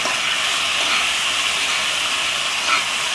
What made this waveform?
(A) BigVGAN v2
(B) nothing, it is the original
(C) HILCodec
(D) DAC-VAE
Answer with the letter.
B